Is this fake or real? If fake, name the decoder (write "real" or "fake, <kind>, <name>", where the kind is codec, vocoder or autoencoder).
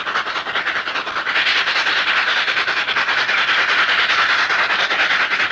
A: real